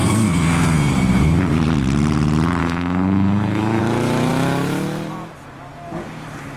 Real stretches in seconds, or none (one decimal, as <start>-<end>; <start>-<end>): 0.9-2.6; 3.8-6.6